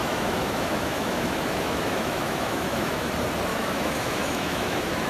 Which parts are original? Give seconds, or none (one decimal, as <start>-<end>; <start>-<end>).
3.1-3.5